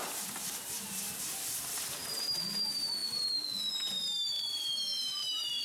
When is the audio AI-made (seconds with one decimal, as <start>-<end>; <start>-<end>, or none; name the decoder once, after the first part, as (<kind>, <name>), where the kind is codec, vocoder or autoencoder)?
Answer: none